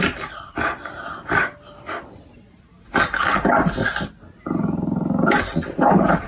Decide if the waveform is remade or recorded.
recorded